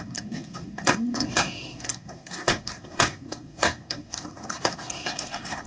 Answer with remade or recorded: remade